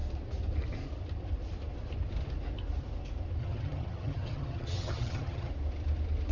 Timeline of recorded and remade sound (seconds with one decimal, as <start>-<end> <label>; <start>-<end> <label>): 0.0-3.4 recorded; 3.4-5.5 remade; 5.5-6.3 recorded